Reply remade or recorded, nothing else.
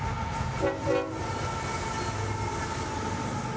recorded